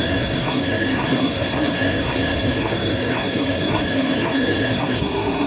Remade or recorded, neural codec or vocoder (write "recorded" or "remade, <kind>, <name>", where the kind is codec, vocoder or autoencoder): remade, codec, SNAC